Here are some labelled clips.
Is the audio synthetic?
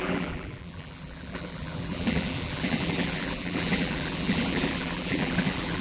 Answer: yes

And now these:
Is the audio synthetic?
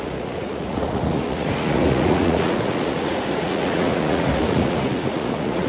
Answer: yes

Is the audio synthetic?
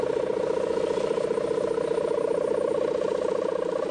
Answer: yes